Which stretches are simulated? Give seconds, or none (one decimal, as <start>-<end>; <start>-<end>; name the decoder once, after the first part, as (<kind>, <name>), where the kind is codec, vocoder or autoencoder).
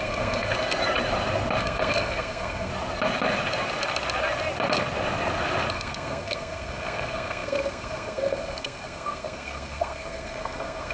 0.0-0.5 (codec, SNAC); 1.6-2.7; 5.7-10.9